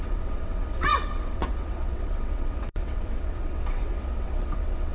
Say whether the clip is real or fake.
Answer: fake